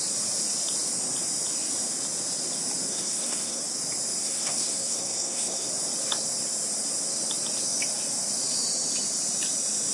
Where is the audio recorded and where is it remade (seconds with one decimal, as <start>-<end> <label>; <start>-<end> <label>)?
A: 0.0-2.9 recorded; 2.9-3.6 remade; 3.6-4.2 recorded; 4.2-5.7 remade; 5.7-9.9 recorded